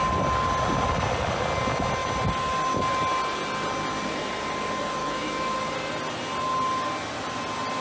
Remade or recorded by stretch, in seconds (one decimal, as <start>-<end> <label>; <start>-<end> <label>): 0.0-5.0 recorded; 5.0-5.6 remade; 5.6-7.8 recorded